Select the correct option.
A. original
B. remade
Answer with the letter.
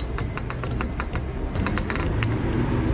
A